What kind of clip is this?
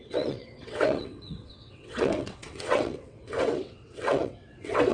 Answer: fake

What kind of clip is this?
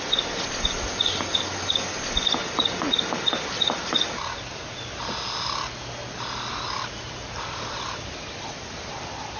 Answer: real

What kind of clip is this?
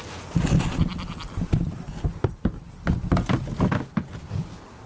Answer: real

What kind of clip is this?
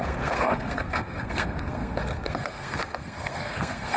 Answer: fake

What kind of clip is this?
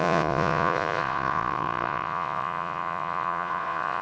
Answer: fake